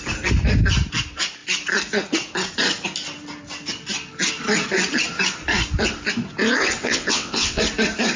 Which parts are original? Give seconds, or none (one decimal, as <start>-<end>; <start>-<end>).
0.0-6.8; 7.6-8.2